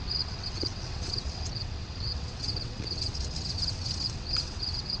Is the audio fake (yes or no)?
yes